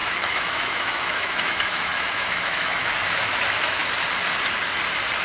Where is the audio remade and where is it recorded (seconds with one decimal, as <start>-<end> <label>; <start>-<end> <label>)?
0.0-3.8 remade; 3.8-5.2 recorded